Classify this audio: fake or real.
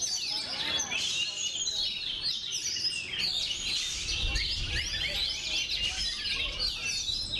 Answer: real